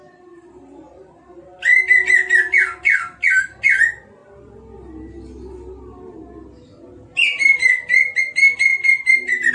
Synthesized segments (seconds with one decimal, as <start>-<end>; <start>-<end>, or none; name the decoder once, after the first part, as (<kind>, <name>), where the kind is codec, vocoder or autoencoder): none